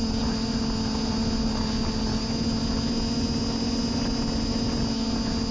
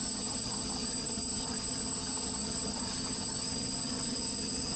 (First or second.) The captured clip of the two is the first